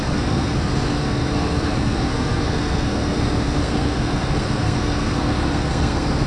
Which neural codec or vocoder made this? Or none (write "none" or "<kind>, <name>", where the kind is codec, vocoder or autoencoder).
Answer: codec, SNAC